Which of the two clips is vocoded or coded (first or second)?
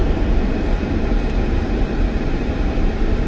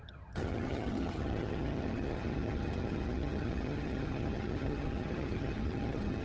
second